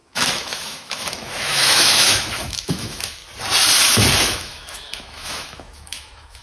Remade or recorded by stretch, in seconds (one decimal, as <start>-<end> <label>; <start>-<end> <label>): 0.0-3.2 remade; 3.2-4.2 recorded; 4.2-6.4 remade